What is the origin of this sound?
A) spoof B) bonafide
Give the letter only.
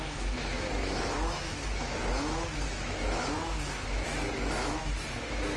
A